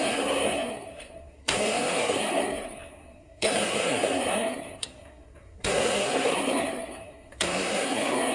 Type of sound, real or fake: fake